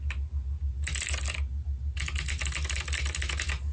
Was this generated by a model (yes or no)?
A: no